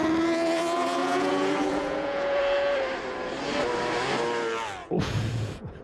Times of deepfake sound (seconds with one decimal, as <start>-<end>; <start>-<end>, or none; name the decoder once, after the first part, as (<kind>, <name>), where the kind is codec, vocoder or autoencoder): 1.0-2.4 (vocoder, Vocos); 4.8-5.8